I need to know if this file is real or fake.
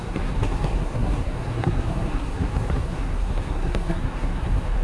fake